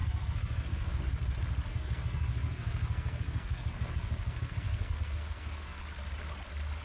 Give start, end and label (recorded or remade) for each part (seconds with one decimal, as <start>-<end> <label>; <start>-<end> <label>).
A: 0.0-1.0 remade; 1.0-1.7 recorded; 1.7-5.8 remade; 5.8-6.8 recorded